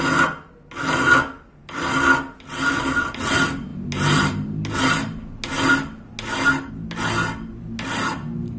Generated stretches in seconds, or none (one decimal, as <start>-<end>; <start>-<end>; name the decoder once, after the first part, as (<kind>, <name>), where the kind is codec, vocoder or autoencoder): none